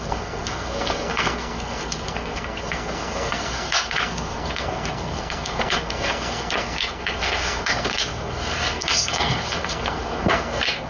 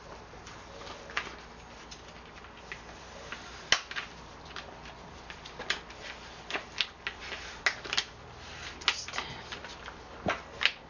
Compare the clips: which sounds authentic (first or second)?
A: second